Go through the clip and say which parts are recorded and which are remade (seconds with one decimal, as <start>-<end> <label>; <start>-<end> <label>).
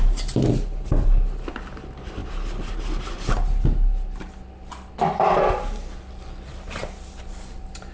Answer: 0.0-7.9 recorded